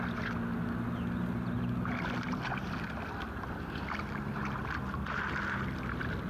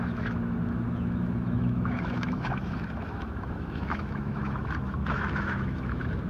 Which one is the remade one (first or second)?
second